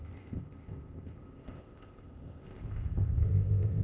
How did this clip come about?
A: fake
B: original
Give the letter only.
A